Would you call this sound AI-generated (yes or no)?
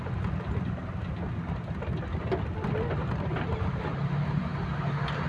no